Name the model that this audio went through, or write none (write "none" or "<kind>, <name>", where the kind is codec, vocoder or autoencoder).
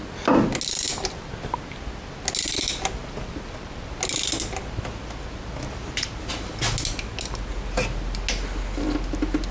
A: none